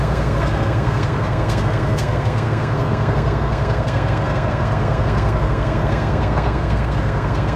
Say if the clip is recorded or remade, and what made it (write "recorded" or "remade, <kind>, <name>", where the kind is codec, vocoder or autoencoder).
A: remade, codec, SNAC